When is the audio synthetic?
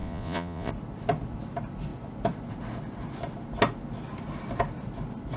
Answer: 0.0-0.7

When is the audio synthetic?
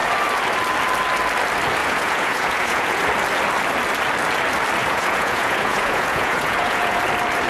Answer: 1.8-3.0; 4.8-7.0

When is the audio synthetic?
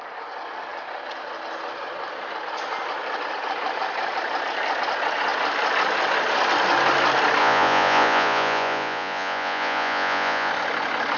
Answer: 7.4-10.5